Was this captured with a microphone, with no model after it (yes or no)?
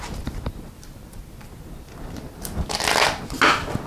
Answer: yes